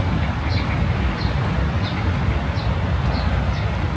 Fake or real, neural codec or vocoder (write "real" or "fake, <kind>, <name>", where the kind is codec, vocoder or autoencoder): real